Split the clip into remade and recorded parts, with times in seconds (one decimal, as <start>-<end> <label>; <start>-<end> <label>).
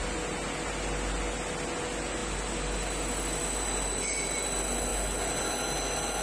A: 0.0-6.2 recorded